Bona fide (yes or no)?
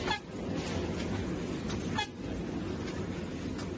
yes